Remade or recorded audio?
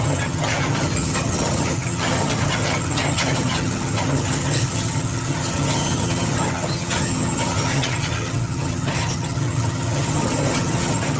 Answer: remade